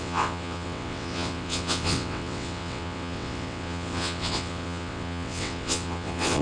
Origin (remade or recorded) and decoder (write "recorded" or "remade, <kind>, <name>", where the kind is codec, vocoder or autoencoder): remade, vocoder, WaveNeXt